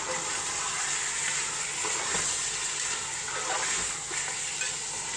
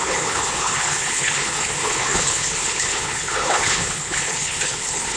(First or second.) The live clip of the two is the first